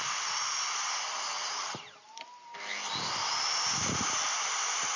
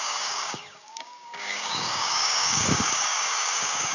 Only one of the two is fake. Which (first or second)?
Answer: second